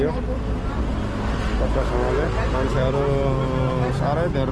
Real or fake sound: real